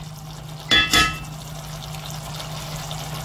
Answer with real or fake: real